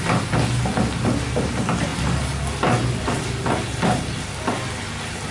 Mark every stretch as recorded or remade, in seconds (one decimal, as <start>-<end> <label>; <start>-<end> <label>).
0.0-5.3 recorded